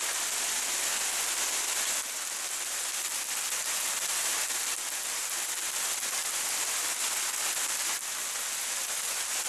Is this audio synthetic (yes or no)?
no